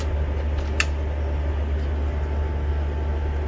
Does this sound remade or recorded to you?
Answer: recorded